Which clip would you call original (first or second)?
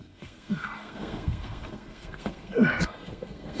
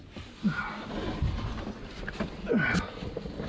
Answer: second